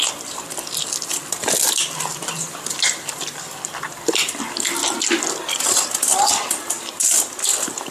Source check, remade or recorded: recorded